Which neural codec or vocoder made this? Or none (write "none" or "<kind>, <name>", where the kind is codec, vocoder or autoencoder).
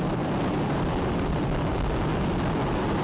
none